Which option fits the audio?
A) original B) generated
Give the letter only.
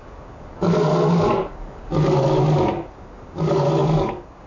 B